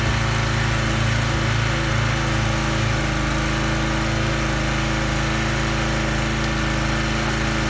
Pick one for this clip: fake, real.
real